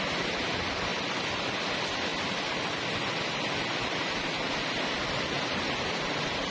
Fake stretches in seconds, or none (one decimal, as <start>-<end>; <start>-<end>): none